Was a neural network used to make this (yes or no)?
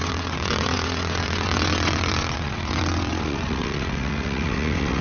yes